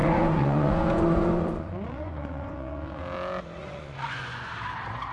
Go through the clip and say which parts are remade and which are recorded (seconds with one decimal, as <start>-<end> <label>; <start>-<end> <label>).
0.0-3.0 remade; 3.0-3.6 recorded; 3.6-4.5 remade; 4.5-5.1 recorded